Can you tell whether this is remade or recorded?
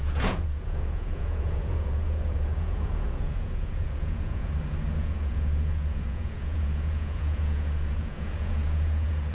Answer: remade